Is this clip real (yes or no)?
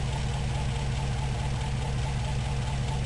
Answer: yes